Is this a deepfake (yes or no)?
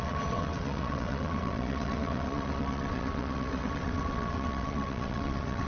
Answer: yes